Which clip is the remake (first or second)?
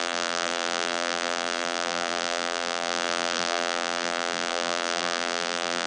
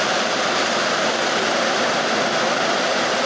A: first